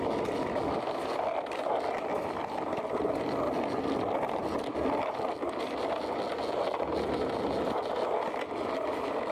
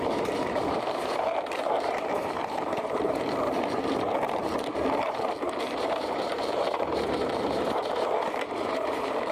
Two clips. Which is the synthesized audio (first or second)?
second